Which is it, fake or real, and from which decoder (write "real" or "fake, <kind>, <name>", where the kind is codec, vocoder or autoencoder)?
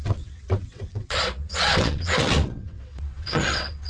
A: fake, vocoder, WaveNeXt